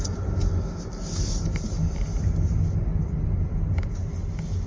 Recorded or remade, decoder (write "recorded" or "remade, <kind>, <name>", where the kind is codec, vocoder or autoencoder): recorded